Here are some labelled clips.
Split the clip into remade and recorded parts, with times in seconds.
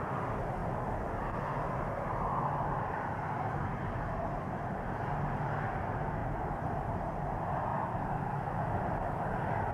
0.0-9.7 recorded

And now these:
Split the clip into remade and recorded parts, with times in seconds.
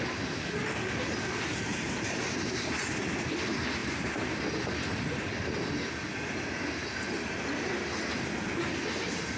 0.0-1.7 recorded; 1.7-2.7 remade; 2.7-3.8 recorded; 3.8-4.4 remade; 4.4-9.4 recorded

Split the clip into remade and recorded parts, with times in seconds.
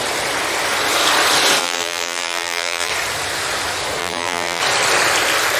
0.0-1.6 recorded; 1.6-2.9 remade; 2.9-4.0 recorded; 4.0-4.6 remade; 4.6-5.6 recorded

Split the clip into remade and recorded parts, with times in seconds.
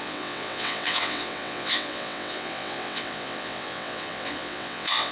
0.0-5.1 remade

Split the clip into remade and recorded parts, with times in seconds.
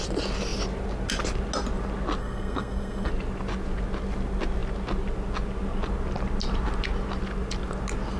0.0-2.2 recorded; 2.2-3.1 remade; 3.1-8.2 recorded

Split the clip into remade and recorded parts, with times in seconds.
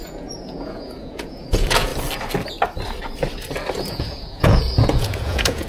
0.0-1.9 remade; 1.9-3.9 recorded; 3.9-5.7 remade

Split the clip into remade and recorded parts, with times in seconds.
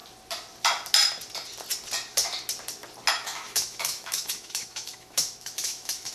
0.0-3.1 recorded; 3.1-6.1 remade